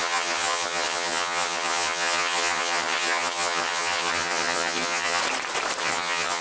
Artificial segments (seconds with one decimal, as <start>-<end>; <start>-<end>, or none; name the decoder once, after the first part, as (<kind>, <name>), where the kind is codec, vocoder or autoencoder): 0.0-5.2 (vocoder, HiFi-GAN); 5.8-6.4